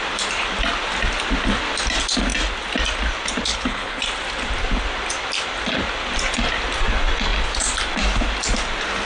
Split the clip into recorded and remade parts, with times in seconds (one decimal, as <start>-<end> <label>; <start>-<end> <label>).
0.0-3.5 recorded; 3.5-4.0 remade; 4.0-9.1 recorded